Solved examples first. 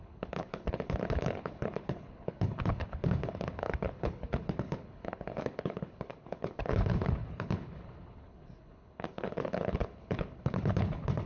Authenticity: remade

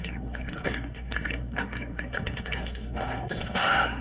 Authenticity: remade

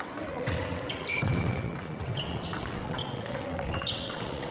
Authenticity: remade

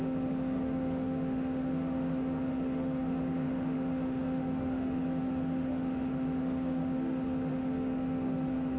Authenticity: remade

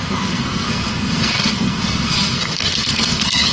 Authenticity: remade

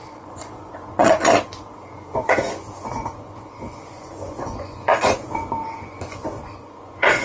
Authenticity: remade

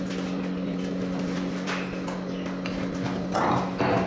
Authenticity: recorded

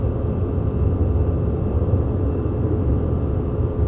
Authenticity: recorded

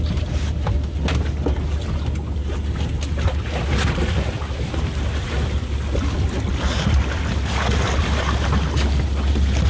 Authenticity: recorded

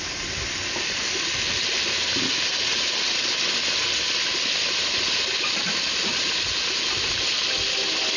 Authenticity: recorded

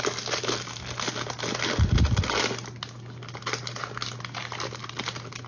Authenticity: recorded